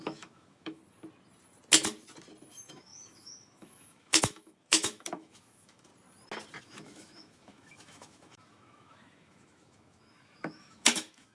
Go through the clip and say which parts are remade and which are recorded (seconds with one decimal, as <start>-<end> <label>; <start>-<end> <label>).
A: 0.0-0.8 remade; 0.8-2.5 recorded; 2.5-5.9 remade; 5.9-6.6 recorded; 6.6-11.3 remade